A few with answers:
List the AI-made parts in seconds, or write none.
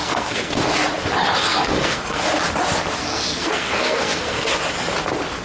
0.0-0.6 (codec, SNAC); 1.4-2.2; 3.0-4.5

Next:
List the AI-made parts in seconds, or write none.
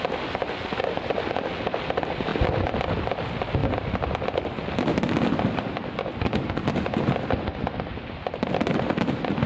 none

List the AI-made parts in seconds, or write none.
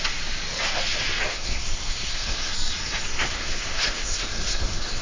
1.3-2.5 (codec, SNAC); 3.2-5.0